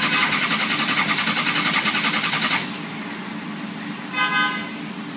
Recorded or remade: recorded